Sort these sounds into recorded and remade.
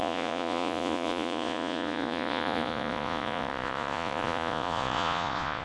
remade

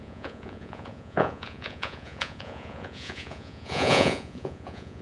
remade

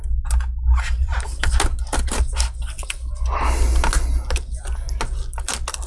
recorded